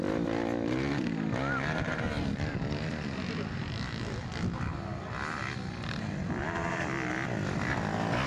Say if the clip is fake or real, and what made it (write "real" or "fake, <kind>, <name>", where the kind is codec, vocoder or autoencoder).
real